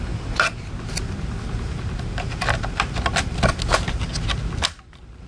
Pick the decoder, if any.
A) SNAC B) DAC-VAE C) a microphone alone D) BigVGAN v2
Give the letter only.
C